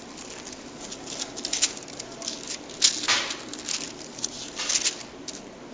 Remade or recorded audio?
recorded